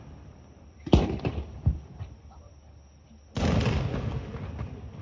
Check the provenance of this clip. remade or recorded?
recorded